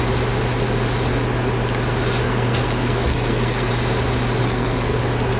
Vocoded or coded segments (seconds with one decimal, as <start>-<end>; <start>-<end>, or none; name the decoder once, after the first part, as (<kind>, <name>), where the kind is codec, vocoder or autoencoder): 2.2-3.7 (codec, SNAC); 4.4-5.0

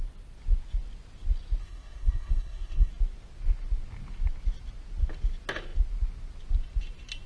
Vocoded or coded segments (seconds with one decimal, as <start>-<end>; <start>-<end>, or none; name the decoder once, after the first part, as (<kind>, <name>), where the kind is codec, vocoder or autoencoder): 1.6-2.9 (codec, SNAC)

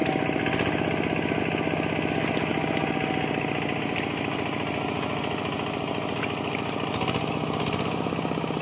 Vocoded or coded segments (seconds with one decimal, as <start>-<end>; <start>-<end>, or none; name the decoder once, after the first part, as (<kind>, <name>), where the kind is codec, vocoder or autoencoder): none

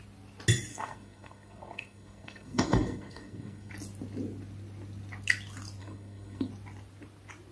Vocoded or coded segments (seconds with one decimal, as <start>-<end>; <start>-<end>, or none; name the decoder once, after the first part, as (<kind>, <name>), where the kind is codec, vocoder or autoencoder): 0.7-3.7 (codec, SNAC); 5.8-6.5

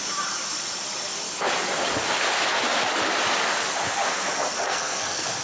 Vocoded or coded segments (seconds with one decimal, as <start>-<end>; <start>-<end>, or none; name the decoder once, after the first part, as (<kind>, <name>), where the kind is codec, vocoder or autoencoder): 4.5-5.4 (codec, SNAC)